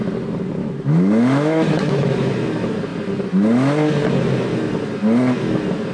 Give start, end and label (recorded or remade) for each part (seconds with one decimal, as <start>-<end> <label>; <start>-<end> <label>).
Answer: 0.0-0.6 recorded; 0.6-2.3 remade; 2.3-5.9 recorded